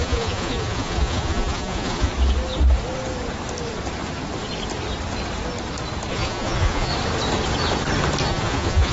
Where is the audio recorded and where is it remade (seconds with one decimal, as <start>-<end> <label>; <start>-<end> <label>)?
0.0-2.1 remade; 2.1-6.1 recorded; 6.1-6.9 remade; 6.9-8.3 recorded; 8.3-8.9 remade